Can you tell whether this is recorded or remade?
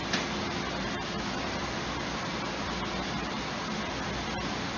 recorded